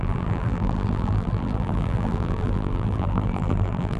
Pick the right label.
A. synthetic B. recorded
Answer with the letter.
A